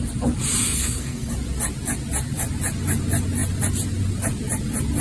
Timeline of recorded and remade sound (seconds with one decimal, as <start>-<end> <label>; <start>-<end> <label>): 0.0-0.6 recorded; 0.6-1.3 remade; 1.3-5.0 recorded

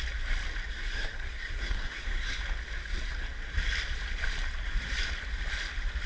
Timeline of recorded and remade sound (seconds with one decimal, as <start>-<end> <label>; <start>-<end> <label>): 0.0-0.7 recorded; 0.7-2.4 remade; 2.4-6.1 recorded

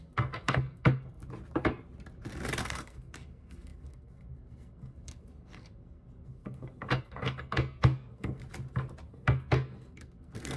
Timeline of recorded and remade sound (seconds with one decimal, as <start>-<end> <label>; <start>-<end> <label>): 0.0-1.2 remade; 1.2-2.6 recorded; 2.6-8.4 remade; 8.4-9.1 recorded; 9.1-10.6 remade

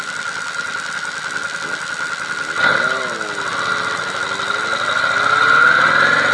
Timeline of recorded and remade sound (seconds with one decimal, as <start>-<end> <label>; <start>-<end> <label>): 0.0-6.3 recorded

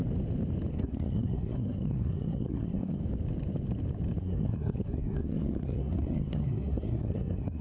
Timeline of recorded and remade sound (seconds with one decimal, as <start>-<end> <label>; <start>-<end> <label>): 0.0-0.7 recorded; 0.7-3.0 remade; 3.0-4.2 recorded; 4.2-7.6 remade

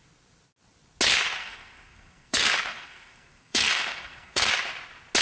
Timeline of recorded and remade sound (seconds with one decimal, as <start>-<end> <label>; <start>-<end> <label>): 0.0-1.4 recorded; 1.4-4.5 remade; 4.5-5.2 recorded

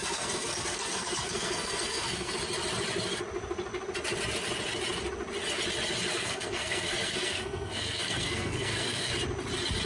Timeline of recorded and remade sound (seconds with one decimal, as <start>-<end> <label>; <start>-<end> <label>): 0.0-2.3 remade; 2.3-6.1 recorded; 6.1-9.1 remade; 9.1-9.9 recorded

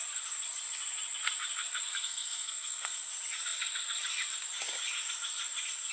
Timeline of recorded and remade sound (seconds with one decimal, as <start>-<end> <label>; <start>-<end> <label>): 0.0-1.9 recorded; 1.9-3.1 remade; 3.1-5.9 recorded